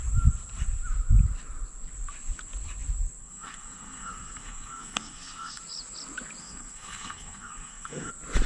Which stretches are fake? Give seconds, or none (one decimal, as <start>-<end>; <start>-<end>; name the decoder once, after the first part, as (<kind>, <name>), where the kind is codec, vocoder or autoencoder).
3.2-5.6 (codec, SNAC); 6.4-8.1